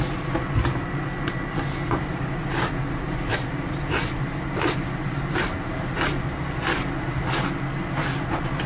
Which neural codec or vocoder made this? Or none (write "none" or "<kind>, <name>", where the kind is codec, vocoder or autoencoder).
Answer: none